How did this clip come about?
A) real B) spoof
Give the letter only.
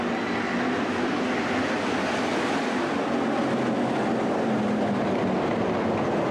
A